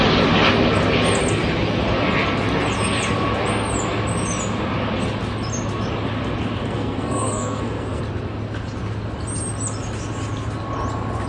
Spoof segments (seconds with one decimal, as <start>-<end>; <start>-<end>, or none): 6.6-8.0

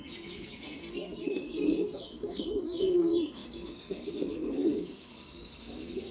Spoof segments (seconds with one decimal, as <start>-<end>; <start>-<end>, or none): 0.0-6.1

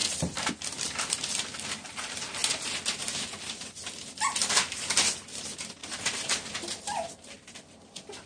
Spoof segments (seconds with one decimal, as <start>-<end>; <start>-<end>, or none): none

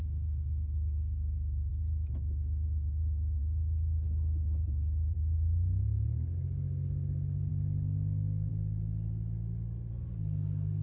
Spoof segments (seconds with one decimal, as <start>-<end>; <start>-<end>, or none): 0.0-1.7

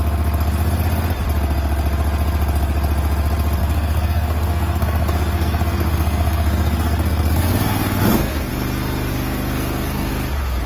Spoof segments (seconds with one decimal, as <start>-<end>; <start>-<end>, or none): 3.6-8.5; 9.1-10.1

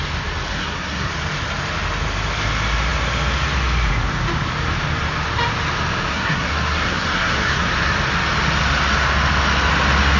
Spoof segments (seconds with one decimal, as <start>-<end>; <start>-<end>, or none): 0.5-1.1; 6.1-7.7

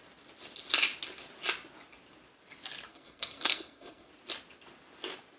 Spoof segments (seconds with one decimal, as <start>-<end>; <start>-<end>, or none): 2.9-4.1

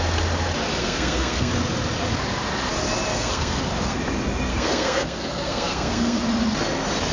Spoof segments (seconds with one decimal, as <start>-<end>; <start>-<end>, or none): 0.8-1.5; 3.1-4.0; 4.5-6.2